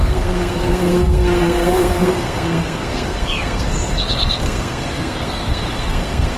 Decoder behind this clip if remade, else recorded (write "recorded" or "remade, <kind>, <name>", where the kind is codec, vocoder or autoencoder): remade, codec, SNAC